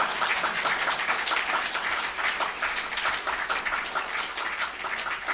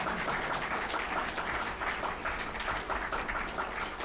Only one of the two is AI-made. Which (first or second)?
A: second